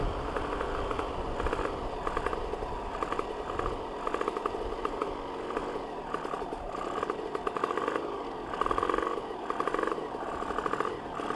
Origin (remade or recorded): recorded